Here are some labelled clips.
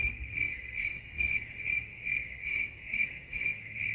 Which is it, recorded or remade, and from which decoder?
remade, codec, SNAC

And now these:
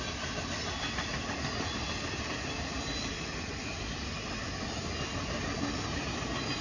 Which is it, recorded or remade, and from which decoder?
recorded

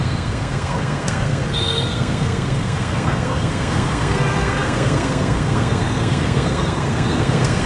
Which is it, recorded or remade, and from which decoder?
remade, codec, SNAC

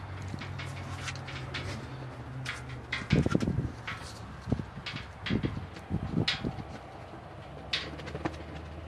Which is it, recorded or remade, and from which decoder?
recorded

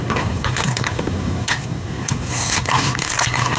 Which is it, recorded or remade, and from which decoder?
remade, codec, SNAC